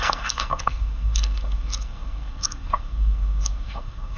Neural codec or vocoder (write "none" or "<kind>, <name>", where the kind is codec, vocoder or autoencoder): codec, SNAC